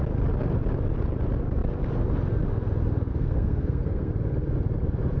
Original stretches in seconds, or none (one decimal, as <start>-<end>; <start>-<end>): 0.0-3.1; 4.1-5.2